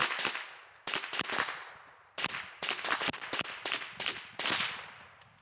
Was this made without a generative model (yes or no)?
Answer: yes